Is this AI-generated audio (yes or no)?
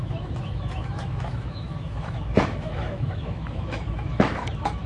yes